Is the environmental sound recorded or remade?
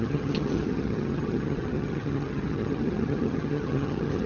remade